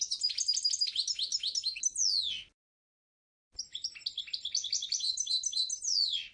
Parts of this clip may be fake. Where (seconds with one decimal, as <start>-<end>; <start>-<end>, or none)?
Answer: 0.0-1.3; 4.7-6.3